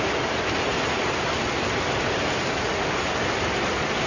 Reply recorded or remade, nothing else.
recorded